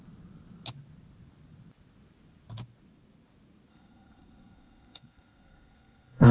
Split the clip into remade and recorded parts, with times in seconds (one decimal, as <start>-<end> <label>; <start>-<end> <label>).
0.0-3.7 recorded; 3.7-6.3 remade